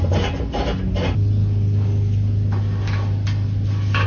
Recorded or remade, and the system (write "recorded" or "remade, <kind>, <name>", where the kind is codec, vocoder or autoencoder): recorded